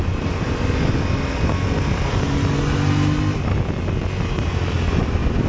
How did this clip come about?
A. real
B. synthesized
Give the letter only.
A